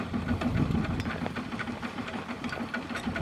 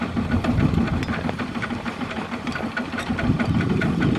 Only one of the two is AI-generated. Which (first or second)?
second